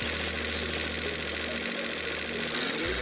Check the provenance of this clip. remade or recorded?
recorded